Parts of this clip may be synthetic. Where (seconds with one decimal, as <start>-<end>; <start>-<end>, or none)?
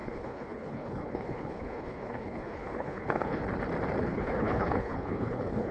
0.0-3.4; 4.0-5.7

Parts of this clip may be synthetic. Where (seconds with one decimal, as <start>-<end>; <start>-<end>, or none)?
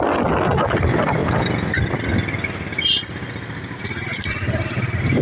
none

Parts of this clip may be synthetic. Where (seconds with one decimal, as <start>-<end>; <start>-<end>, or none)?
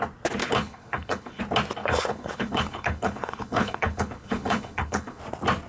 0.4-1.4; 1.8-5.2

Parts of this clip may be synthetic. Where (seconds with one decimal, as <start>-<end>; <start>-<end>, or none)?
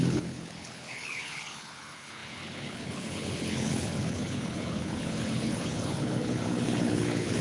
0.0-7.4